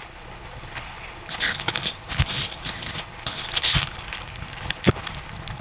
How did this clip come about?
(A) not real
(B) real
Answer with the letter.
A